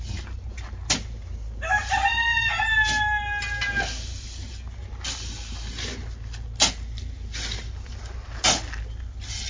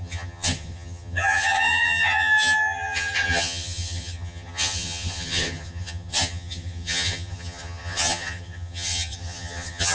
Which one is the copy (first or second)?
second